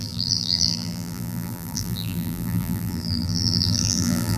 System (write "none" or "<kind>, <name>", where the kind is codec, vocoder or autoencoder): vocoder, BigVGAN v2